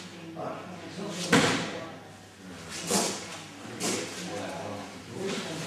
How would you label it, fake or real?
real